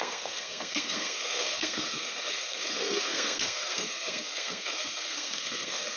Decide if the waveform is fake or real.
fake